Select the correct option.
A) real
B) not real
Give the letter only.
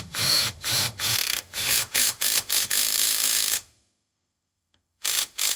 B